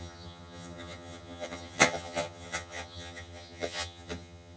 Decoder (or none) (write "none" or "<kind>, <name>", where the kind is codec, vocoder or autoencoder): vocoder, HiFi-GAN